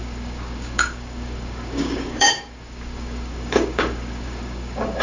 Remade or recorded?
remade